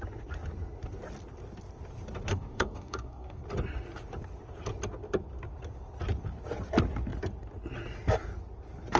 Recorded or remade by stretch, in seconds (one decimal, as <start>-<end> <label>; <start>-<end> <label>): 0.0-2.3 recorded; 2.3-3.4 remade; 3.4-9.0 recorded